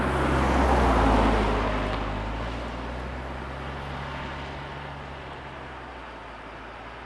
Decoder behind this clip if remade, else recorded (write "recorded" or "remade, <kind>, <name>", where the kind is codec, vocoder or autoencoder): recorded